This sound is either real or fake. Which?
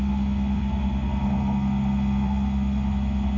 real